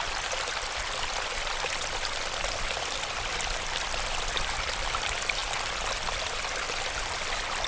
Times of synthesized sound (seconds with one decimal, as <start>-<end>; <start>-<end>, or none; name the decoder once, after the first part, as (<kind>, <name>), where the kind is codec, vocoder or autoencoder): none